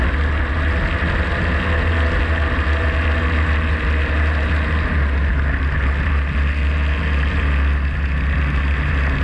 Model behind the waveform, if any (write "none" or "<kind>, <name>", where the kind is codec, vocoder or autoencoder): none